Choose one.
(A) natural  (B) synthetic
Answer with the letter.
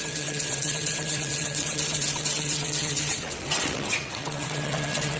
B